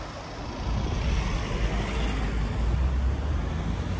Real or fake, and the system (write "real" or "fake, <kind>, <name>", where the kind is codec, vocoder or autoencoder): real